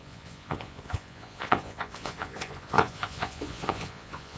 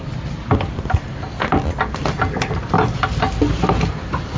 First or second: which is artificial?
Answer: first